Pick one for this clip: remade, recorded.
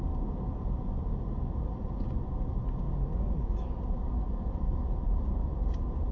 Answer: recorded